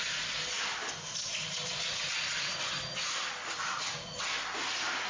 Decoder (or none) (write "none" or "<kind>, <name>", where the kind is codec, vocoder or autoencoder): none